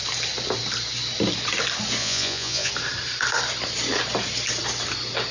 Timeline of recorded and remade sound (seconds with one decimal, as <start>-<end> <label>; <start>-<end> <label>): 0.0-2.0 recorded; 2.0-2.7 remade; 2.7-5.3 recorded